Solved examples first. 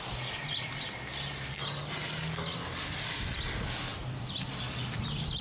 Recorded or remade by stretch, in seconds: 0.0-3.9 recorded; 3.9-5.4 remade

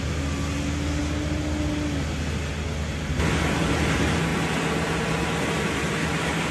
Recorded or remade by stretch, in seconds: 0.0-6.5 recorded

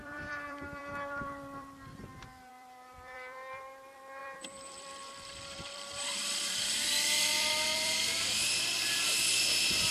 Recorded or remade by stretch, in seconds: 0.0-9.9 remade

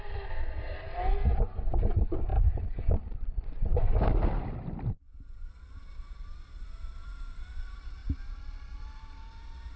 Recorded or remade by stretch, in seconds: 0.0-2.3 recorded; 2.3-5.4 remade; 5.4-8.0 recorded; 8.0-8.8 remade; 8.8-9.8 recorded

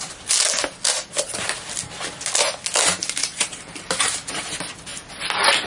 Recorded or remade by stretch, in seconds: 0.0-3.3 recorded; 3.3-4.5 remade; 4.5-5.7 recorded

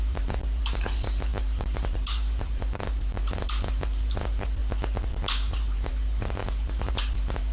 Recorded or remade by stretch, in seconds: 0.0-4.6 remade; 4.6-5.1 recorded; 5.1-7.5 remade

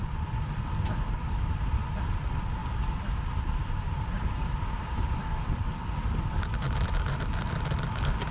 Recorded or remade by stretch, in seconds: 0.0-2.6 recorded; 2.6-5.2 remade; 5.2-8.3 recorded

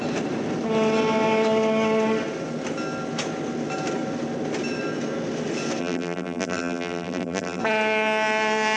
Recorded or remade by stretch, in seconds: 0.0-5.8 recorded; 5.8-7.6 remade; 7.6-8.8 recorded